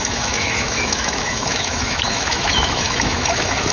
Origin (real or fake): fake